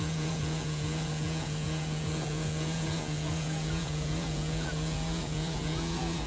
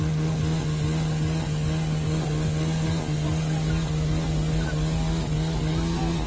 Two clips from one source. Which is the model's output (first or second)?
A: first